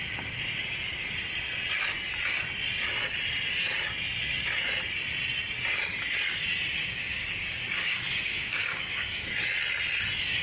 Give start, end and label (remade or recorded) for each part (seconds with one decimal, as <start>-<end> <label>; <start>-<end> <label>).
0.0-6.8 recorded; 6.8-9.3 remade; 9.3-10.4 recorded